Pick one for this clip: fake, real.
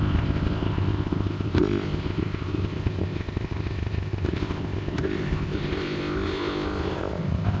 fake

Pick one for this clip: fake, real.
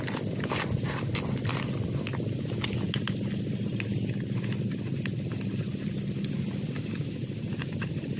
real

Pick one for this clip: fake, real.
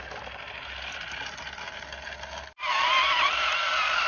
real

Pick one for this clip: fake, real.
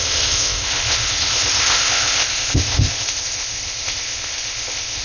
fake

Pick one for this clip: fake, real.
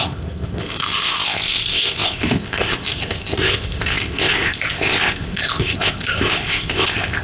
fake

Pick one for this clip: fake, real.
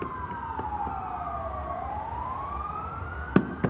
real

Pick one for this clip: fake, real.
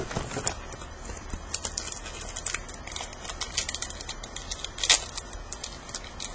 real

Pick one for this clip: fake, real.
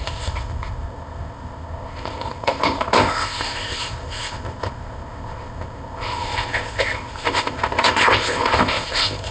fake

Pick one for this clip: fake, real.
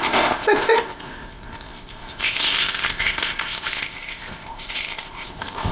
fake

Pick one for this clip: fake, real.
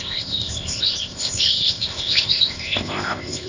fake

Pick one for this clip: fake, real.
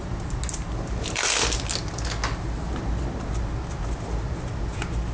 real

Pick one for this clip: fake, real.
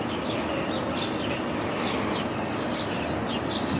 real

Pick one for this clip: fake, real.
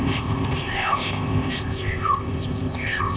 fake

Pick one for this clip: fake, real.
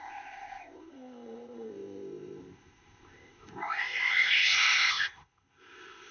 fake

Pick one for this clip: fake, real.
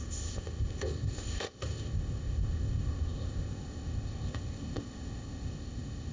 fake